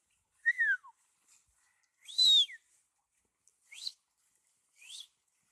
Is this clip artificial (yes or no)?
no